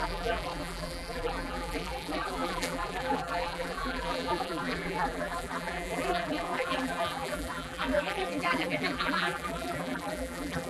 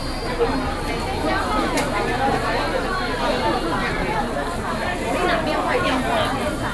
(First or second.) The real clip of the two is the second